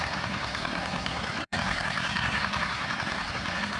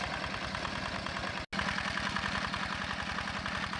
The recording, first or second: second